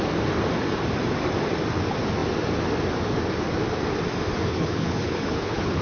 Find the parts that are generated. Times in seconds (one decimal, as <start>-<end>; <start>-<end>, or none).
4.5-5.8